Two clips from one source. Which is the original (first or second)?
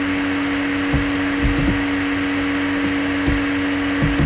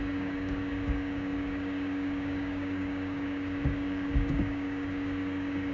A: first